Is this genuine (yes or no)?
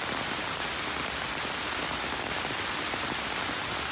yes